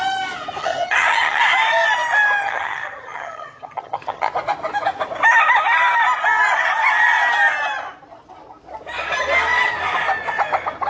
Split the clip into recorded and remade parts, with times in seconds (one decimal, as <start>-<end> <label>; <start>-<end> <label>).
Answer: 0.0-0.6 recorded; 0.6-1.4 remade; 1.4-2.4 recorded; 2.4-4.3 remade; 4.3-10.9 recorded